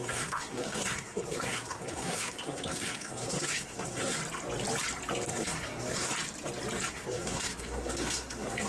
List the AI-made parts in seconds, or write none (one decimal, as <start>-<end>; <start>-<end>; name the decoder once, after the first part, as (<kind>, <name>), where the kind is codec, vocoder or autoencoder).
0.0-4.2 (codec, SNAC); 5.3-6.1; 6.9-8.7